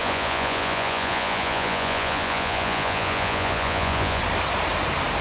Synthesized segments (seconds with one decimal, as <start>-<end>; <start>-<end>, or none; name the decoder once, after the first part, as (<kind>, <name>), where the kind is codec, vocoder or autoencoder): 0.0-4.2 (vocoder, Vocos)